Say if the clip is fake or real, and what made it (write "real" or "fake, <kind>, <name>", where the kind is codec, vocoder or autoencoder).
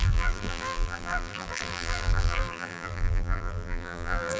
fake, vocoder, BigVGAN v2